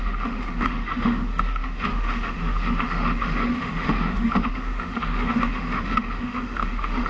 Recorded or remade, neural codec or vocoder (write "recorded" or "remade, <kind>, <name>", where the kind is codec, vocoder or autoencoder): remade, autoencoder, DAC-VAE